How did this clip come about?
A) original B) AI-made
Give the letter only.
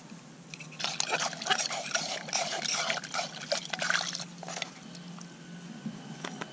A